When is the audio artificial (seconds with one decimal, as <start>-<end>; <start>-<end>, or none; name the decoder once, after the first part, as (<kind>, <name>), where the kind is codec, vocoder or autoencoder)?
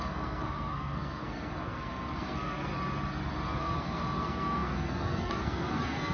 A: 0.0-2.7 (codec, SNAC); 3.6-6.1